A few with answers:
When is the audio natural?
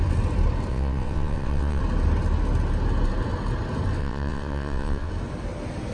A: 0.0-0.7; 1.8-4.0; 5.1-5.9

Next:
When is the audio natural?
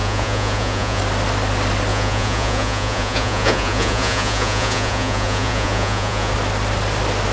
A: 1.0-1.9; 6.3-7.3